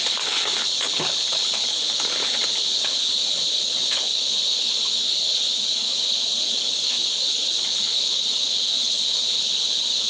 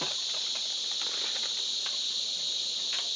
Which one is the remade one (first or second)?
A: first